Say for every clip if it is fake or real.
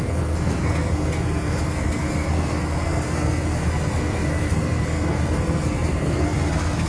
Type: fake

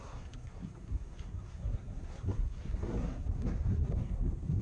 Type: fake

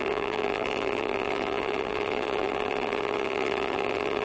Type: fake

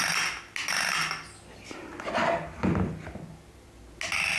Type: real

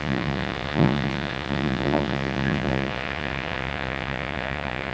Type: fake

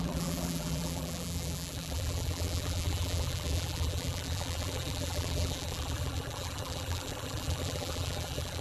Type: fake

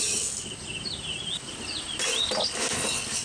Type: real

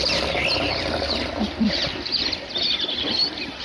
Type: real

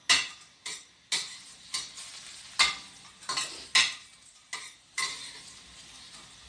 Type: real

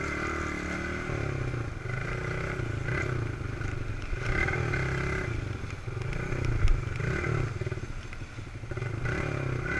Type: real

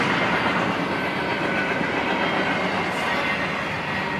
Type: real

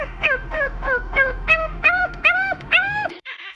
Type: fake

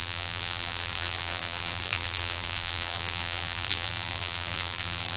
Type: fake